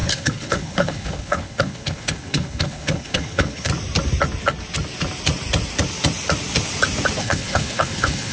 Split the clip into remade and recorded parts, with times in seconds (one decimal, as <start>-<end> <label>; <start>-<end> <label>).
0.0-3.7 remade; 3.7-7.2 recorded; 7.2-8.3 remade